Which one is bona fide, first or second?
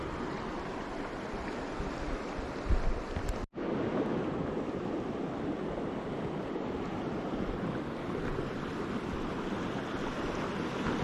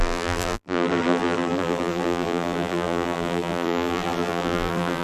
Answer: first